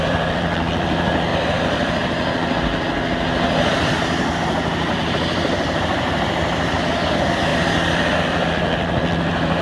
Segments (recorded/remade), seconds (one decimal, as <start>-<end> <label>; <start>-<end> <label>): 0.0-1.3 remade; 1.3-4.9 recorded; 4.9-9.6 remade